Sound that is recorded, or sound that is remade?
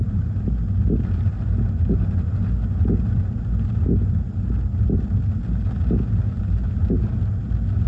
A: recorded